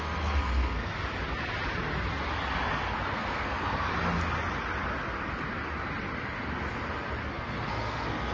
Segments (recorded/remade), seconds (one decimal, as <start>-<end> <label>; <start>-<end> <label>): 0.0-0.9 remade; 0.9-3.1 recorded; 3.1-3.9 remade; 3.9-7.3 recorded; 7.3-8.3 remade